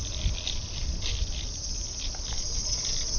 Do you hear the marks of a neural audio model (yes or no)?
no